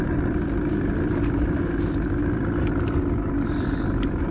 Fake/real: real